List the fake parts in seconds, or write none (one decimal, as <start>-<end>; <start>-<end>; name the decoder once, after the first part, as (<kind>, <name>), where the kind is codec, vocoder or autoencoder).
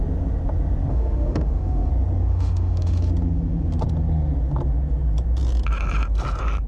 0.9-1.9 (autoencoder, DAC-VAE); 2.3-3.1